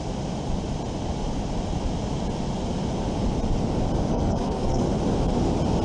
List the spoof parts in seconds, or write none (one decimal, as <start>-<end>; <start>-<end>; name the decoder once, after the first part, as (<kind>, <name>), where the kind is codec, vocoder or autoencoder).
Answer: 4.1-4.9 (codec, SNAC)